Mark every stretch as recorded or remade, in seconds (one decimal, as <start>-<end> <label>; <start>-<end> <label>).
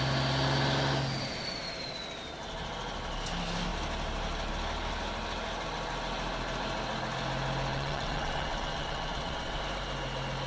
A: 0.0-7.7 recorded; 7.7-9.6 remade; 9.6-10.5 recorded